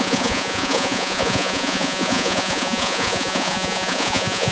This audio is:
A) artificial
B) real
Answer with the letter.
A